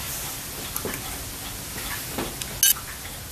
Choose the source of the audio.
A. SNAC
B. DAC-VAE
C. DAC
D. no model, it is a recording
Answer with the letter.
D